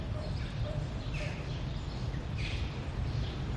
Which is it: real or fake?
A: fake